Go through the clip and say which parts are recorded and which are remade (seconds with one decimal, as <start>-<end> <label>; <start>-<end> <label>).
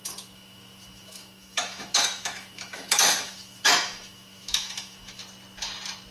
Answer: 0.0-5.2 remade; 5.2-6.1 recorded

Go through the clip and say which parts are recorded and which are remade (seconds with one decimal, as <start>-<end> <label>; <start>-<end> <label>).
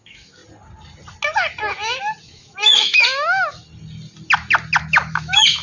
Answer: 0.0-0.4 remade; 0.4-2.2 recorded; 2.2-3.6 remade; 3.6-4.8 recorded; 4.8-5.6 remade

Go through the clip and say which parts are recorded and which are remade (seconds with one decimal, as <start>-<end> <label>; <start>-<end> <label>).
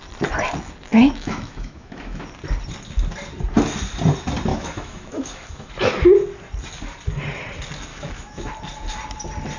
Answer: 0.0-0.9 recorded; 0.9-2.2 remade; 2.2-4.5 recorded; 4.5-5.7 remade; 5.7-7.9 recorded; 7.9-8.5 remade; 8.5-9.6 recorded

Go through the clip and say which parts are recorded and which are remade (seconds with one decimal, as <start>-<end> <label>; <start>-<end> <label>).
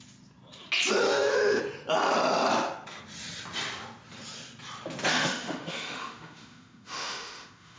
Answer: 0.0-1.0 recorded; 1.0-1.6 remade; 1.6-5.1 recorded; 5.1-7.8 remade